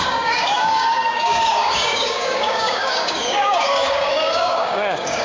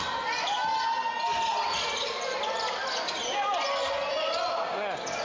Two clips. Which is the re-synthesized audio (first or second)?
first